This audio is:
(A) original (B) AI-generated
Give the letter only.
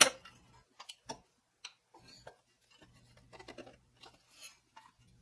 A